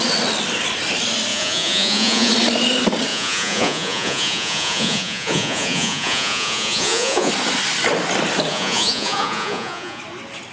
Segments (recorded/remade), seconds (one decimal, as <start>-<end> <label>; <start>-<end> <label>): 0.0-1.3 recorded; 1.3-2.3 remade; 2.3-3.1 recorded; 3.1-7.3 remade; 7.3-8.5 recorded; 8.5-10.0 remade; 10.0-10.5 recorded